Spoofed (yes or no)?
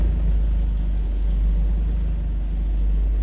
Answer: no